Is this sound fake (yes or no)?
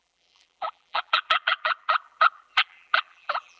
yes